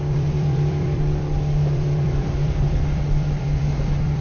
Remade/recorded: remade